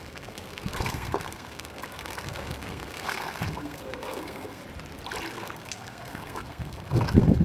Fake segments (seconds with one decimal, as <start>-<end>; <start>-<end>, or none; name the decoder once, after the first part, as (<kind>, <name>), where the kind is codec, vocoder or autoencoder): 0.0-4.6 (codec, SNAC); 5.3-7.4